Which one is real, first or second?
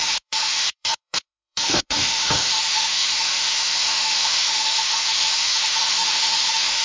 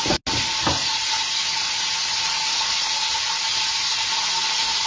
second